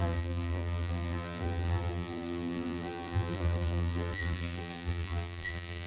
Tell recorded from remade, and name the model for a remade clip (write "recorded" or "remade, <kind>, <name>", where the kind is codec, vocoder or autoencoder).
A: remade, vocoder, BigVGAN v2